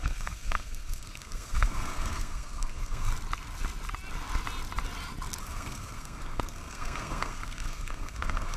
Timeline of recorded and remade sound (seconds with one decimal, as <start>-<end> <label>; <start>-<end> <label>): 0.0-3.1 remade; 3.1-5.4 recorded; 5.4-8.6 remade